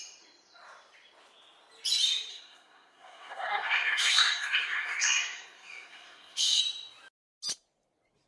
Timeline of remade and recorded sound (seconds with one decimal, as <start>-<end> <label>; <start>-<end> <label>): 0.0-2.3 recorded; 2.3-6.6 remade; 6.6-8.3 recorded